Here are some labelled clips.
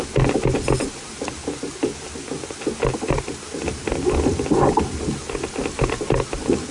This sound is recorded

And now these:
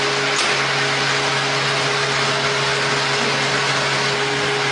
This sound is recorded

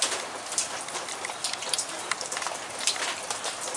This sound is recorded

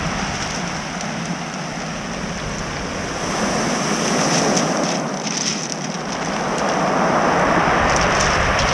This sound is recorded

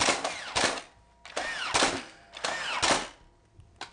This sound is recorded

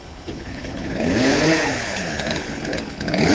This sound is remade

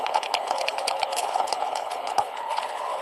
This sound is remade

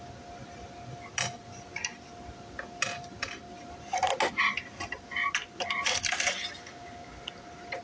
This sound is recorded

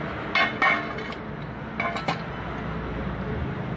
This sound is recorded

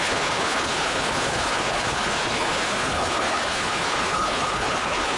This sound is remade